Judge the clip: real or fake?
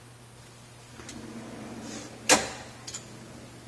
real